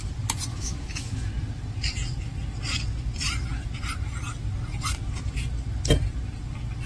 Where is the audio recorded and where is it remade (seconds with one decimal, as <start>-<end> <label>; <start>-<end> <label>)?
0.0-0.5 recorded; 0.5-1.3 remade; 1.3-6.9 recorded